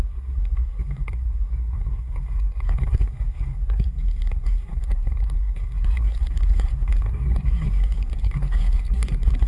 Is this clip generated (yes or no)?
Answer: yes